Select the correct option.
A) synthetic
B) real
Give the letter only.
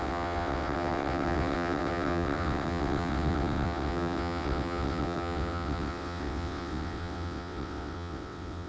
A